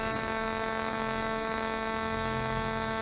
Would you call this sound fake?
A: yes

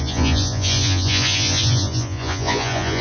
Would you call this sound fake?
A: yes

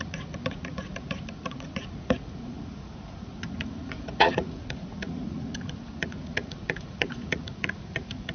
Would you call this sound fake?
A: yes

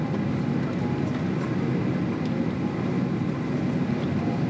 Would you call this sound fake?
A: no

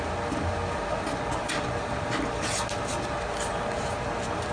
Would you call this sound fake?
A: no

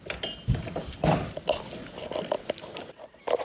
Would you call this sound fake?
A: no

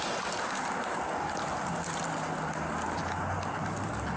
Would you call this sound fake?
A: no